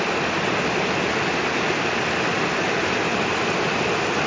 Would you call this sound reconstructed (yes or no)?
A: no